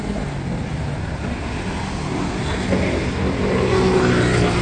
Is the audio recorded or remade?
recorded